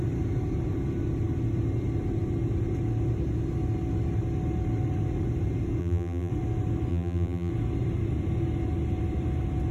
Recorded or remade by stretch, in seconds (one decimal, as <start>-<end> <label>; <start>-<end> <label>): 0.0-5.8 recorded; 5.8-6.3 remade; 6.3-6.9 recorded; 6.9-7.5 remade; 7.5-9.7 recorded